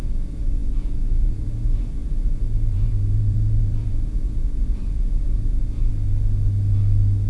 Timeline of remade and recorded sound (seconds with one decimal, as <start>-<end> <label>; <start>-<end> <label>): 0.0-5.9 remade; 5.9-7.3 recorded